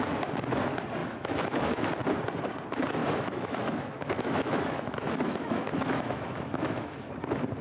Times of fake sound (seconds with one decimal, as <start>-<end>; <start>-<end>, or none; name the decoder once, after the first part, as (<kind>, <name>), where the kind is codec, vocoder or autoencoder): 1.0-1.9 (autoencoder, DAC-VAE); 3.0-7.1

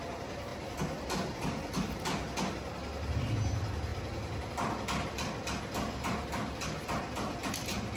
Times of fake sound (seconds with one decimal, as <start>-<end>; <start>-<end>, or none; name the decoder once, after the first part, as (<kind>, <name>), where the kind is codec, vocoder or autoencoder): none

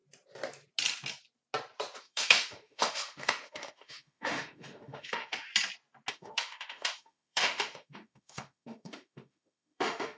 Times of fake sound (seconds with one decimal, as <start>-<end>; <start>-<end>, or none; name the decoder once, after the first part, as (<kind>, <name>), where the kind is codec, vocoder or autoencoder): 2.0-5.5 (autoencoder, DAC-VAE); 6.1-10.2